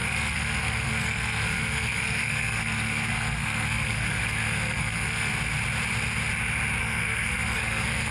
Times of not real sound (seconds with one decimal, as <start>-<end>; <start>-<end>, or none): 0.0-5.3; 6.8-8.1